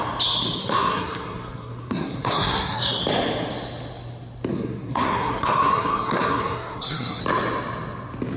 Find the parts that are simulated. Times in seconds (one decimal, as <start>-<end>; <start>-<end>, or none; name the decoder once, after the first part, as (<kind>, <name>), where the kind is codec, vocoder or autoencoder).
0.6-3.0 (codec, SNAC); 4.5-7.2